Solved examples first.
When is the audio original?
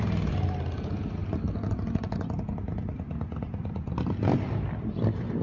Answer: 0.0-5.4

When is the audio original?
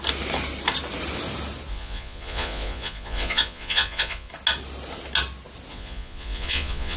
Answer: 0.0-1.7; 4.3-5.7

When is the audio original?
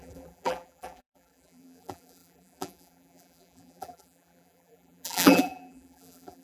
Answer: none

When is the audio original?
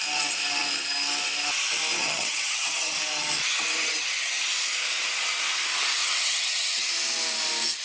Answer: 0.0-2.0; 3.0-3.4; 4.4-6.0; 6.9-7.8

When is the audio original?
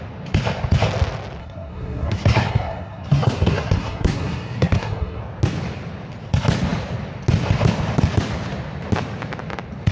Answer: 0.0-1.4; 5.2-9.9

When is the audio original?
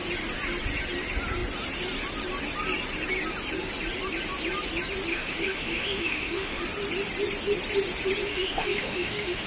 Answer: 0.0-5.1; 6.6-8.3